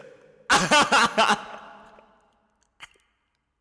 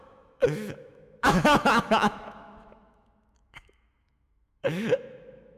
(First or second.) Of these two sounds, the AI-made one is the second